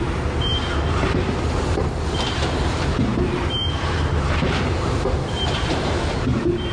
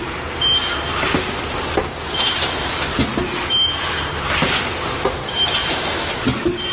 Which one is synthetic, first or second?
first